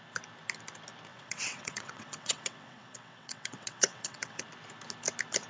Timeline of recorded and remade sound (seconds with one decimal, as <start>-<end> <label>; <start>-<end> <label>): 0.0-1.1 recorded; 1.1-4.4 remade; 4.4-5.5 recorded